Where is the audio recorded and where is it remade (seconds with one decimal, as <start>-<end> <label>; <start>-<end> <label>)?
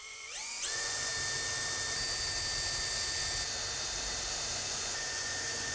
0.0-1.1 remade; 1.1-4.5 recorded; 4.5-5.7 remade